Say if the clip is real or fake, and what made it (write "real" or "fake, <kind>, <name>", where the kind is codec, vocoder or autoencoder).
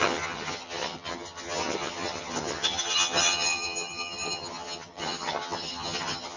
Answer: fake, vocoder, HiFi-GAN